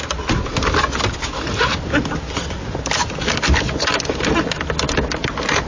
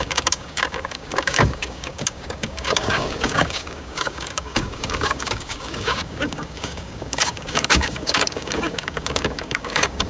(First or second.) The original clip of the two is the first